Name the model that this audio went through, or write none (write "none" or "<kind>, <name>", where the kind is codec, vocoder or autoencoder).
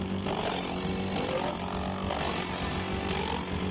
none